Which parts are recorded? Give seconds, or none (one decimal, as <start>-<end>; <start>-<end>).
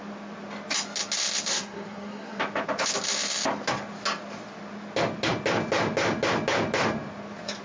0.0-1.5; 2.4-7.6